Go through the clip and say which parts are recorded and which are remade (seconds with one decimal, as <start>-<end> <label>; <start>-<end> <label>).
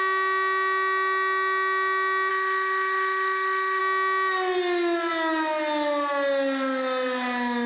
0.0-2.3 recorded; 2.3-3.8 remade; 3.8-7.7 recorded